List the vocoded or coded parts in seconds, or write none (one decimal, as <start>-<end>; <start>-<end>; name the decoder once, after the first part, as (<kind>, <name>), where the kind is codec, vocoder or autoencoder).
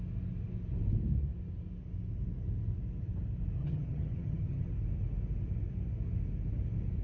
3.6-4.7 (vocoder, HiFi-GAN)